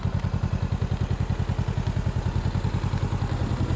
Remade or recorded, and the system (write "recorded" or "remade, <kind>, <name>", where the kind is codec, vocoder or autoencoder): recorded